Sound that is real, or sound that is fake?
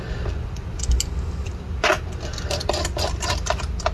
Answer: real